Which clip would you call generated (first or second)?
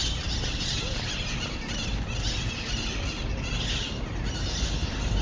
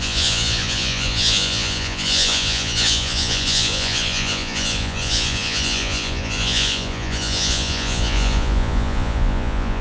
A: second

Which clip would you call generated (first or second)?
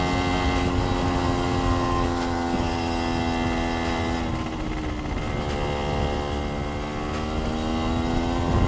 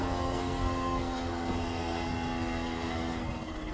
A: second